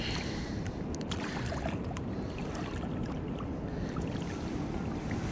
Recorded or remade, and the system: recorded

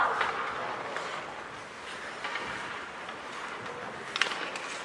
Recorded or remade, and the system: recorded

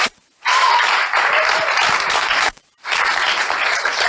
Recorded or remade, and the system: remade, vocoder, BigVGAN v2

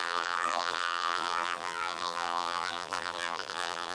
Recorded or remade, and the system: remade, vocoder, BigVGAN v2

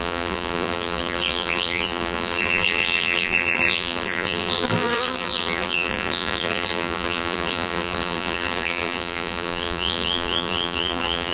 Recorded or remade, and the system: remade, vocoder, BigVGAN v2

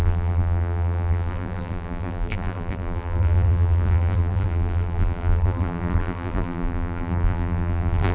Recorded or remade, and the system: remade, vocoder, BigVGAN v2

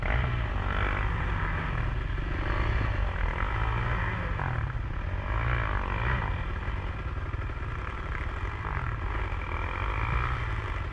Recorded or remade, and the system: recorded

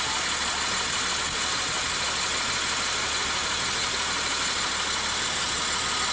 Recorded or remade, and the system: recorded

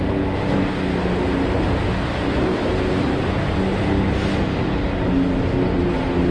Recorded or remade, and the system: recorded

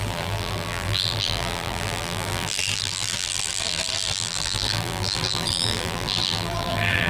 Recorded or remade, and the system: remade, vocoder, BigVGAN v2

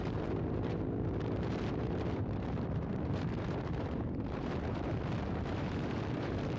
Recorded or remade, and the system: remade, vocoder, BigVGAN v2